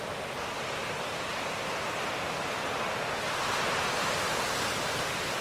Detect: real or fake real